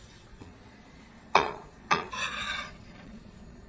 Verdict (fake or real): fake